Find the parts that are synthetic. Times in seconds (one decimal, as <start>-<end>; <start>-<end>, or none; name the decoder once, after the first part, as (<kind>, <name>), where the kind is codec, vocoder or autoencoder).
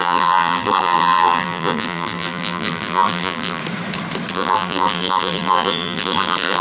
0.0-3.6 (vocoder, BigVGAN v2); 4.3-6.6